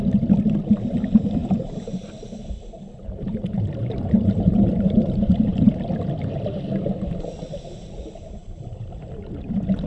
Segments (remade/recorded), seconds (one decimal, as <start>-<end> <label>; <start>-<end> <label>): 0.0-1.4 recorded; 1.4-5.9 remade; 5.9-8.4 recorded; 8.4-9.1 remade; 9.1-9.9 recorded